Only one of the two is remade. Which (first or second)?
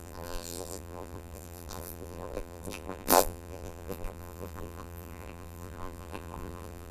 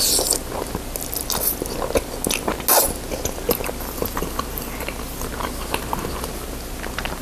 first